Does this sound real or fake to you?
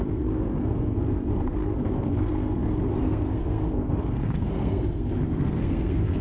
fake